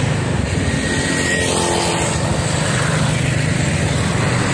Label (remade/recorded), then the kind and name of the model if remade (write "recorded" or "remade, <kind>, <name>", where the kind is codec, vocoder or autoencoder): recorded